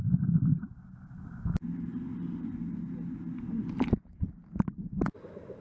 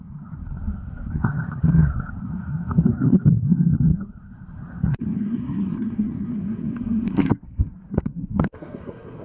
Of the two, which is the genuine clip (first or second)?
first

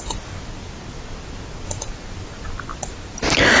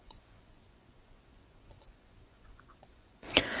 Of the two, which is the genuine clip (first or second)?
first